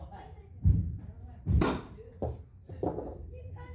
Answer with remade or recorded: recorded